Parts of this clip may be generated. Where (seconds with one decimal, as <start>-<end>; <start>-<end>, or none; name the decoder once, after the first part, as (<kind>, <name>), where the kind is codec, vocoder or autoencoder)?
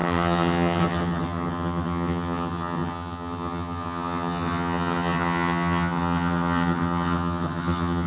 0.0-8.1 (vocoder, HiFi-GAN)